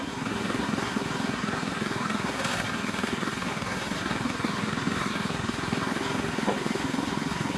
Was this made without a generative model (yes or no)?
no